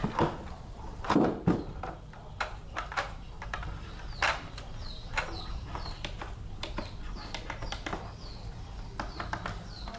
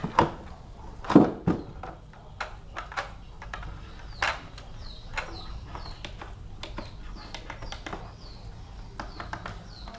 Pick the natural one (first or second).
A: second